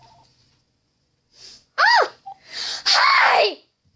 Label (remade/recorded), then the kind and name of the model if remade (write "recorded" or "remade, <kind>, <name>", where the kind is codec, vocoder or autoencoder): remade, vocoder, Vocos